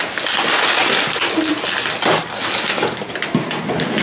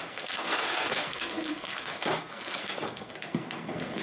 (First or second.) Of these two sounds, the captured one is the first